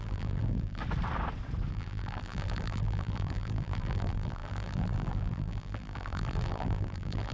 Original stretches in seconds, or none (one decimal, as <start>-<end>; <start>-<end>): 0.8-1.7